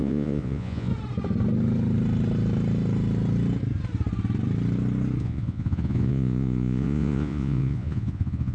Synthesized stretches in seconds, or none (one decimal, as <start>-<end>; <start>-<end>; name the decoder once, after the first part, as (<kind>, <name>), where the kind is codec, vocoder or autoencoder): 0.0-0.9 (vocoder, Vocos); 5.2-8.5